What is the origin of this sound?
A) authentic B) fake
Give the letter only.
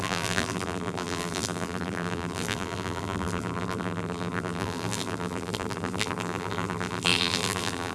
B